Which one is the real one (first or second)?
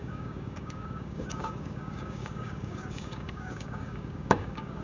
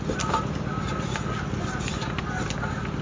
second